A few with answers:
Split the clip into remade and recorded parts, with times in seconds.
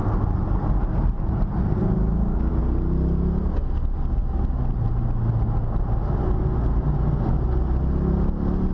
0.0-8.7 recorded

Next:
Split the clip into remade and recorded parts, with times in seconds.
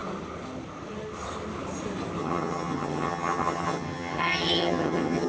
0.0-2.2 recorded; 2.2-5.3 remade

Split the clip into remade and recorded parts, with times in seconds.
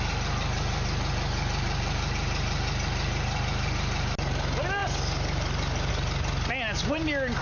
0.0-7.4 recorded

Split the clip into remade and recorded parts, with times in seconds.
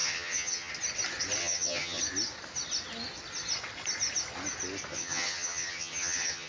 0.0-0.7 remade; 0.7-1.4 recorded; 1.4-2.0 remade; 2.0-4.9 recorded; 4.9-6.5 remade